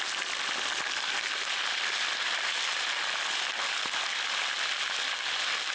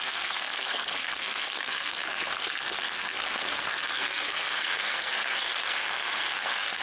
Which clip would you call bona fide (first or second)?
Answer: first